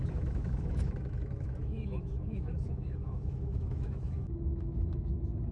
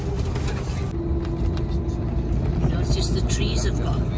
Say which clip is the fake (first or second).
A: first